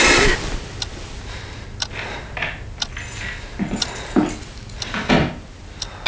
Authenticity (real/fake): real